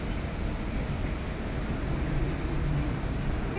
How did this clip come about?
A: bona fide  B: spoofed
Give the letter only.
A